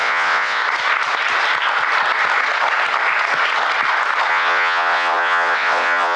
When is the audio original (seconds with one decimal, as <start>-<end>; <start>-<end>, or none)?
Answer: 0.6-4.3